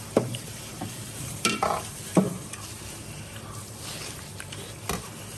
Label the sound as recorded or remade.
remade